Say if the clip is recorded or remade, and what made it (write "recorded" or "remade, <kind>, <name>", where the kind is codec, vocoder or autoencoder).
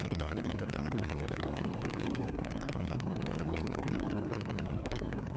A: remade, codec, SNAC